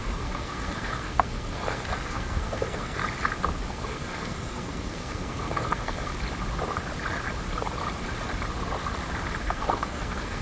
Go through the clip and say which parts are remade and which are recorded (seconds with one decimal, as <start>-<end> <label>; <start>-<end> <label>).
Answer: 0.0-3.0 remade; 3.0-3.7 recorded; 3.7-6.1 remade; 6.1-9.4 recorded; 9.4-10.4 remade